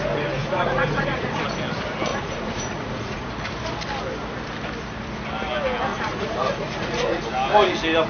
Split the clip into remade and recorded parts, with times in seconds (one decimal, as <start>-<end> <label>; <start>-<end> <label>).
0.0-0.4 recorded; 0.4-1.4 remade; 1.4-2.1 recorded; 2.1-3.3 remade; 3.3-5.9 recorded; 5.9-7.2 remade; 7.2-8.1 recorded